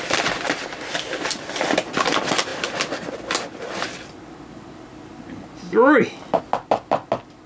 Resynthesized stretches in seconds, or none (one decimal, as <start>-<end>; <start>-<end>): none